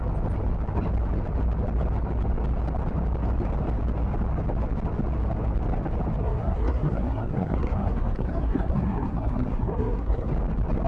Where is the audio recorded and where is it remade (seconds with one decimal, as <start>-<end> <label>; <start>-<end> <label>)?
0.0-6.2 recorded; 6.2-10.3 remade; 10.3-10.9 recorded

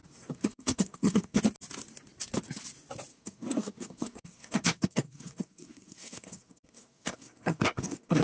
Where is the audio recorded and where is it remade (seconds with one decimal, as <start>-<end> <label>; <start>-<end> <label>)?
0.0-1.4 remade; 1.4-3.1 recorded; 3.1-8.2 remade

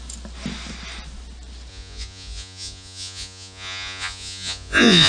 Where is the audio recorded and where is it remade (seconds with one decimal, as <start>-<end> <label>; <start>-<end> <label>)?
0.0-1.7 recorded; 1.7-5.1 remade

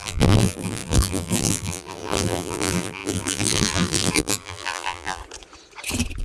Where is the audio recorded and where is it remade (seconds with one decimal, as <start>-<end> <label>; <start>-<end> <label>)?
0.0-5.2 remade; 5.2-6.2 recorded

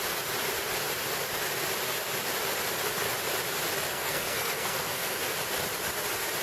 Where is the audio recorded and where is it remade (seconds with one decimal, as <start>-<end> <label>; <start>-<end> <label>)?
0.0-3.9 recorded; 3.9-5.2 remade; 5.2-6.4 recorded

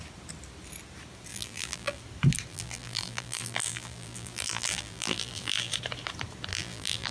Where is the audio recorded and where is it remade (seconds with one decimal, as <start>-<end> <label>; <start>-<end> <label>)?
0.0-1.3 recorded; 1.3-2.0 remade; 2.0-2.5 recorded; 2.5-5.7 remade; 5.7-6.5 recorded; 6.5-7.1 remade